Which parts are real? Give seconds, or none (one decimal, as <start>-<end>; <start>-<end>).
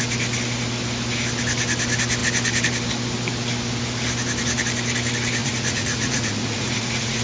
0.0-5.4